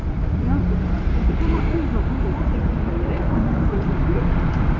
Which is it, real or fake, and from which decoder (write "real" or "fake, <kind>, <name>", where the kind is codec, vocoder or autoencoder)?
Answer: fake, vocoder, BigVGAN v2